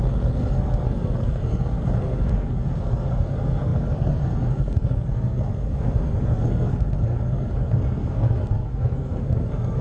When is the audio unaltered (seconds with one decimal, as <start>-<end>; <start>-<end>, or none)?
none